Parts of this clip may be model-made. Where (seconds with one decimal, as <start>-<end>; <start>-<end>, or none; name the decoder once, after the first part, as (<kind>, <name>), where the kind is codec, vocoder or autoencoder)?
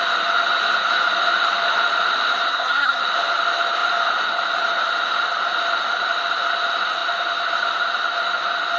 2.5-3.0 (codec, SNAC)